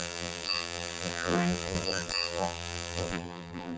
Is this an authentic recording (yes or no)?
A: no